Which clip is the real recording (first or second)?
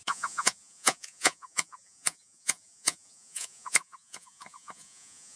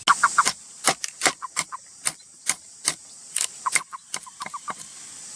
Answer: second